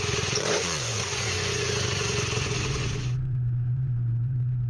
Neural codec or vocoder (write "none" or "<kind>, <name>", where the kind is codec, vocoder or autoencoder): vocoder, Vocos